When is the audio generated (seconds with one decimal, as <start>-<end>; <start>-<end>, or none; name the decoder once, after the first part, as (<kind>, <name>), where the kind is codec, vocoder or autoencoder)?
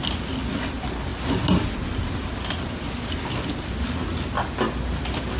none